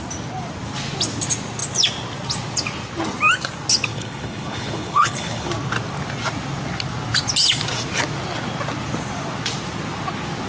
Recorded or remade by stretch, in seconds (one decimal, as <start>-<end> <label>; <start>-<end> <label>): 0.0-3.9 recorded; 3.9-5.5 remade; 5.5-10.5 recorded